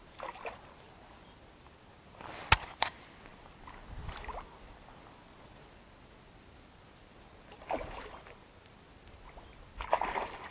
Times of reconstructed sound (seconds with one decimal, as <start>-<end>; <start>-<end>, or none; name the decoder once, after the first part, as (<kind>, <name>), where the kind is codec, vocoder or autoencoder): none